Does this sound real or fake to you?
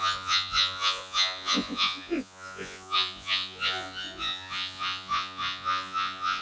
fake